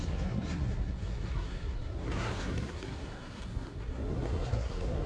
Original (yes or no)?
no